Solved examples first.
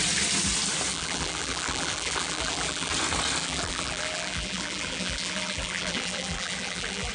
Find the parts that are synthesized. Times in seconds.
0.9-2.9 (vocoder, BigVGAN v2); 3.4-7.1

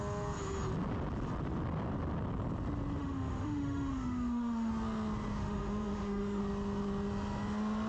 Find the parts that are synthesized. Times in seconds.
3.0-4.7 (autoencoder, DAC-VAE); 5.4-6.4

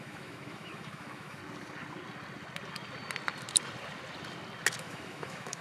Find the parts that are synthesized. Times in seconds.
0.0-1.4 (autoencoder, DAC-VAE); 4.8-5.6

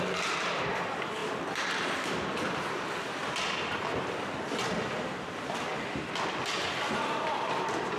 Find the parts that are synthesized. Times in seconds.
1.2-2.9 (vocoder, BigVGAN v2); 5.7-8.0

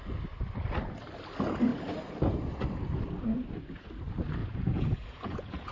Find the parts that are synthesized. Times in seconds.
4.4-5.7 (vocoder, Vocos)

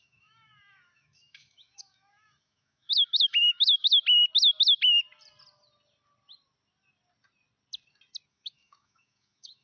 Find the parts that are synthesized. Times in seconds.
0.0-3.9 (autoencoder, DAC-VAE); 8.3-9.6